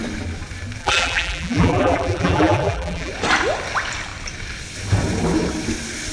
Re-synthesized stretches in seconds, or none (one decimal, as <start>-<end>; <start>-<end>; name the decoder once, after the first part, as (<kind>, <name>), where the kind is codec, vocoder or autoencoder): 0.8-3.1 (vocoder, BigVGAN v2)